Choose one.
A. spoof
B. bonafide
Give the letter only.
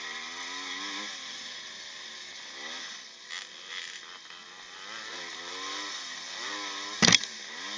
B